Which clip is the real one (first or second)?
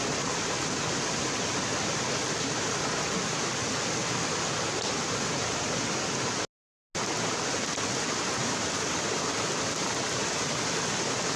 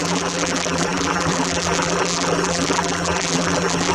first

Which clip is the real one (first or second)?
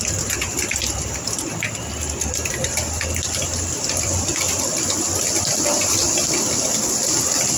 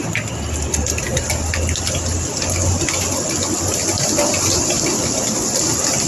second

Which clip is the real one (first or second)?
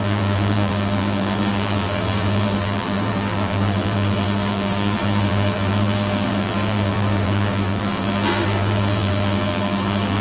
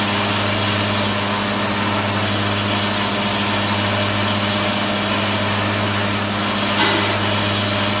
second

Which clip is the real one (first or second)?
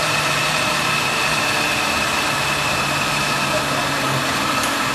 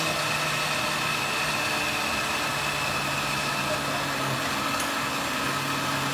second